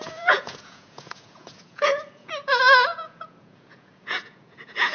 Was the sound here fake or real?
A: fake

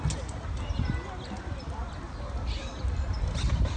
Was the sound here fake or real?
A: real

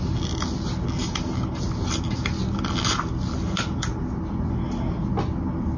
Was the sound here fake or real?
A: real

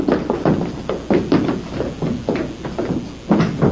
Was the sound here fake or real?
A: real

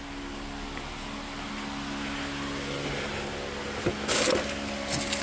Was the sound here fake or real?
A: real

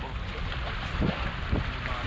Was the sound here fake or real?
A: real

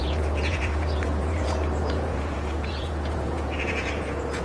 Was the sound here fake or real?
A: fake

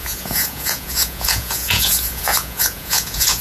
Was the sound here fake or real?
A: fake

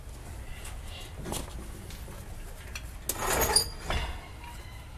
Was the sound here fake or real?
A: real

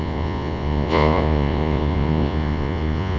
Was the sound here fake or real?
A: fake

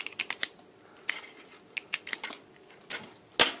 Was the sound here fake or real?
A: real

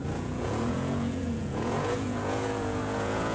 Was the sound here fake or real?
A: fake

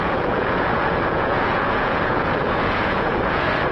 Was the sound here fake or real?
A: fake